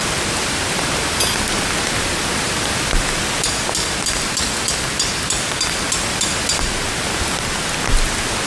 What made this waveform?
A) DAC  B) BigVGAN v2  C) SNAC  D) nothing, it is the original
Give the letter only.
D